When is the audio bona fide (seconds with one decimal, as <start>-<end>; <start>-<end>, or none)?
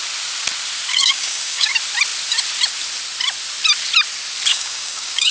0.0-0.9; 1.7-4.5